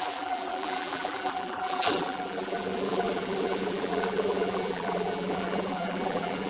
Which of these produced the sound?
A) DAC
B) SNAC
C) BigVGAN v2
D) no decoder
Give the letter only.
C